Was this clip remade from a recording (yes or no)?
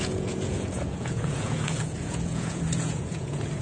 yes